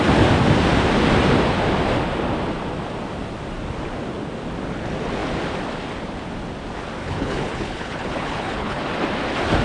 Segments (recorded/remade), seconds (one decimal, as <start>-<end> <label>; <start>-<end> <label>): 0.0-7.0 recorded; 7.0-8.8 remade; 8.8-9.6 recorded